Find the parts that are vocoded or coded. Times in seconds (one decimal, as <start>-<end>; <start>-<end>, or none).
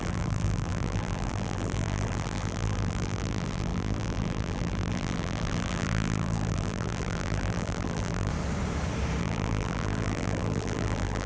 0.0-8.3; 9.2-11.3